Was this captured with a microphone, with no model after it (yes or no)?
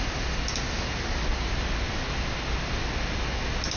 yes